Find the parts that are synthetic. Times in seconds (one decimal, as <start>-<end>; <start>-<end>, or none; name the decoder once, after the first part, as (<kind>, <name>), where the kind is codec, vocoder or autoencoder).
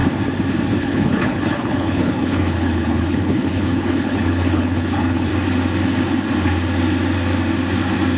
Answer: 0.8-5.3 (codec, HILCodec)